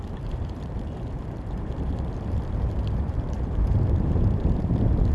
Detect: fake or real fake